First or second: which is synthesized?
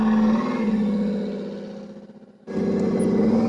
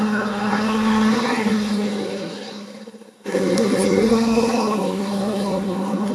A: second